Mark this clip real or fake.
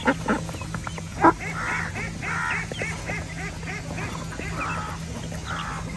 real